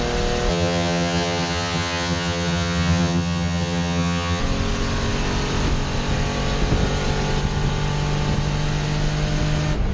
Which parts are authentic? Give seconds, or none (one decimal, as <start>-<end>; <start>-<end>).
0.0-0.5; 4.4-9.9